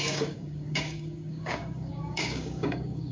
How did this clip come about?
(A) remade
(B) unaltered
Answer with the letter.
A